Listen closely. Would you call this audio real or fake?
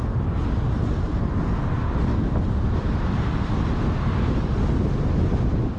real